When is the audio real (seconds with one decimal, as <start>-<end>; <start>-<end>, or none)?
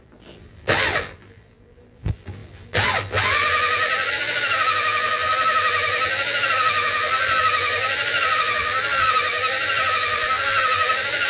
none